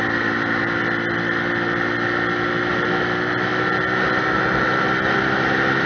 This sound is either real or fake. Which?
real